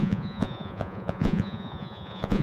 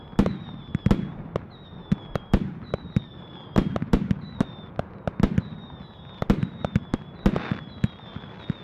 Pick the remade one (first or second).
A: first